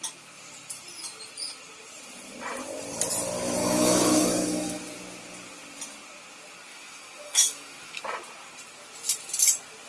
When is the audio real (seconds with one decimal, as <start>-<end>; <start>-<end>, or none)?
0.0-3.6; 4.8-6.7; 8.0-9.9